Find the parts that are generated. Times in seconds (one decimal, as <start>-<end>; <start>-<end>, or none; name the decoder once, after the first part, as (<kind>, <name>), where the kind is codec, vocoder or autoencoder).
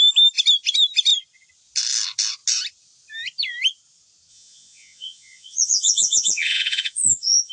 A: 4.3-7.5 (vocoder, Vocos)